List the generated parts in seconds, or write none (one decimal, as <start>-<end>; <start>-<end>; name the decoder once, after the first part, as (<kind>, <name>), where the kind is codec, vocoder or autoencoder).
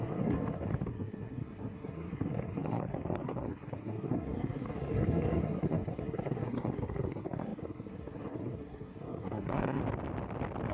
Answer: 0.0-9.8 (codec, SNAC)